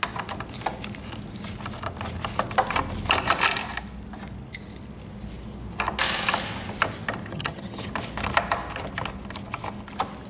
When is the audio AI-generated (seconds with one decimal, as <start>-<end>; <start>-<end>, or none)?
7.3-7.9